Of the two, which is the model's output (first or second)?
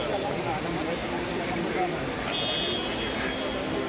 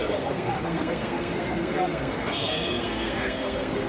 second